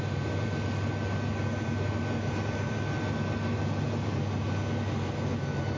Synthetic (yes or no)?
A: no